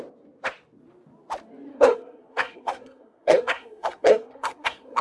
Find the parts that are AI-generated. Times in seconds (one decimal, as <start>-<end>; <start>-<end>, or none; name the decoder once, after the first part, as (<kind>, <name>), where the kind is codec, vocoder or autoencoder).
1.7-5.0 (codec, SNAC)